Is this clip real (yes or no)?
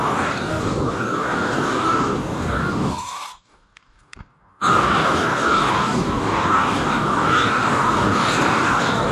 no